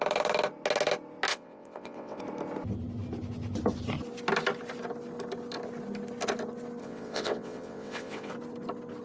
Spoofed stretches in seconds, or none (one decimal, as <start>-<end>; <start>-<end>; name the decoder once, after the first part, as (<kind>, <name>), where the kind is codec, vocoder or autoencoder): 1.3-2.2 (vocoder, WaveNeXt); 6.8-8.3